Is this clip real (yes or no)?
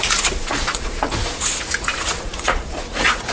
no